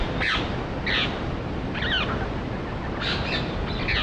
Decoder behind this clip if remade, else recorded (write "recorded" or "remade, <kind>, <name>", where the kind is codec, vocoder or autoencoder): recorded